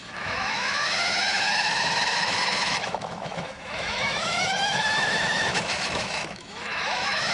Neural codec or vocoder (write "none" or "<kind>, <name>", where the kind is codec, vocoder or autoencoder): autoencoder, DAC-VAE